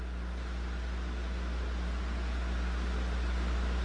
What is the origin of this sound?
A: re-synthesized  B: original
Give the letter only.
B